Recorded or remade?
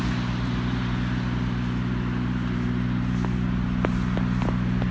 recorded